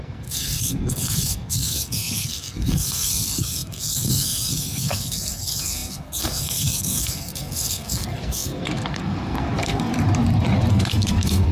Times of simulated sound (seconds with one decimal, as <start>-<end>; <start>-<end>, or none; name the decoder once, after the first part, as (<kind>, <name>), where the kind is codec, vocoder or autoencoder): 0.0-9.9 (codec, SNAC); 10.7-11.5